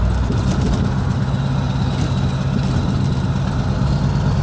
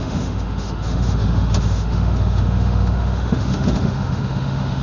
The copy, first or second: second